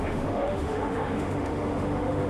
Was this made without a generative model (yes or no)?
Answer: no